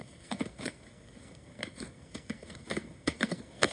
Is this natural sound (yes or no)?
no